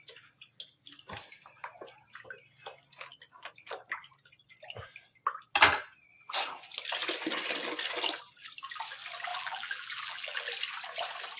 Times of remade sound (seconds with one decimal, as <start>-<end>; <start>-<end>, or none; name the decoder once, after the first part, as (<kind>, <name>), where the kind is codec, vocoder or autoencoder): 9.3-10.5 (vocoder, BigVGAN v2)